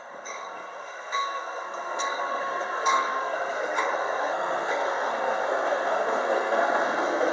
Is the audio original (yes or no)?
no